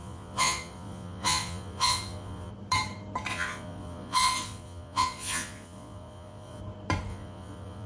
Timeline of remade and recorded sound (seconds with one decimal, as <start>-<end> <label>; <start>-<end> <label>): 0.0-2.5 remade; 2.5-3.3 recorded; 3.3-6.6 remade; 6.6-7.1 recorded; 7.1-7.9 remade